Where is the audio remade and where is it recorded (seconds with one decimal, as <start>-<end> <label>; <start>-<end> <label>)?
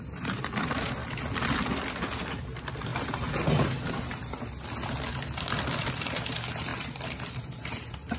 0.0-1.0 remade; 1.0-2.2 recorded; 2.2-2.9 remade; 2.9-3.4 recorded; 3.4-4.2 remade; 4.2-5.8 recorded; 5.8-8.2 remade